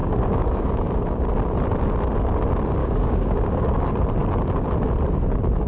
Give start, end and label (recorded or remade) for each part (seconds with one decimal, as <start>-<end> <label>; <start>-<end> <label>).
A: 0.0-1.2 remade; 1.2-2.8 recorded; 2.8-3.8 remade; 3.8-5.7 recorded